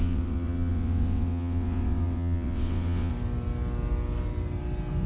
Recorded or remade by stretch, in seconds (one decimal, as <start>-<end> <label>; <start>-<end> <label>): 0.0-3.1 remade; 3.1-5.1 recorded

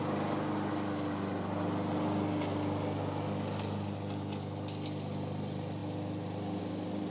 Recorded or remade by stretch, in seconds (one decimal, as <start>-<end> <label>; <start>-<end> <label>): 0.0-7.1 recorded

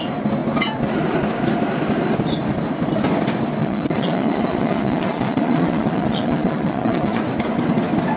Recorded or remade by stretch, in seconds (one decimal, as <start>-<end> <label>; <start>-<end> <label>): 0.0-3.6 recorded; 3.6-7.2 remade; 7.2-8.2 recorded